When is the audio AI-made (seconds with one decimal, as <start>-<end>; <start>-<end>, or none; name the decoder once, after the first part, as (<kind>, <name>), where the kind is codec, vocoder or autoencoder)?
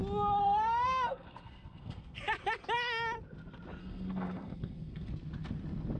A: 0.4-2.2 (codec, SNAC); 3.8-5.1